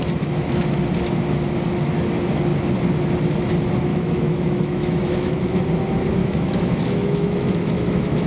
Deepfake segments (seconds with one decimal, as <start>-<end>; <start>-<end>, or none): 3.9-5.6; 6.2-8.3